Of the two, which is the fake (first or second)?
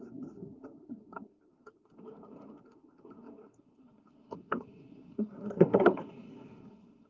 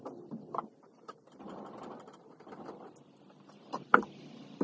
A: first